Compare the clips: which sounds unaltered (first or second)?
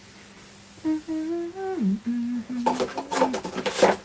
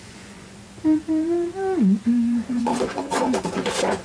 first